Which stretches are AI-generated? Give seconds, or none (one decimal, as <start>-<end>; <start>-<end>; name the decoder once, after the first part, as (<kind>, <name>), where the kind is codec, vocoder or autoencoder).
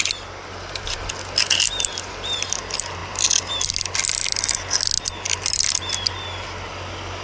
none